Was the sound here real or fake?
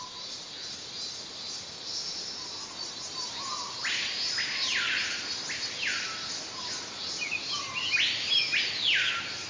real